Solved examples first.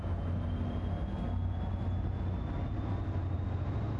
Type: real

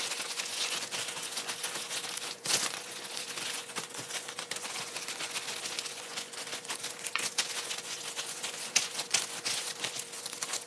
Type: fake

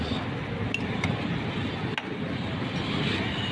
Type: real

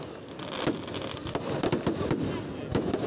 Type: real